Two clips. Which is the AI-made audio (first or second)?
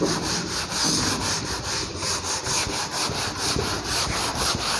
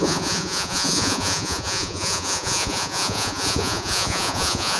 second